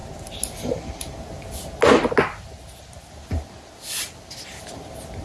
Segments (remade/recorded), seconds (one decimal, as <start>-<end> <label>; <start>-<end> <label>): 0.0-5.2 recorded